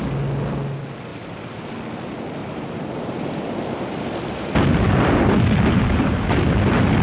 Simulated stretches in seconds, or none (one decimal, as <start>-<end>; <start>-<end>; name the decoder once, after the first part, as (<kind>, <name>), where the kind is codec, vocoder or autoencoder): 1.1-1.7 (vocoder, BigVGAN v2); 2.4-6.6